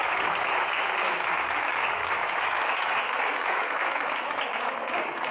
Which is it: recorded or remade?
remade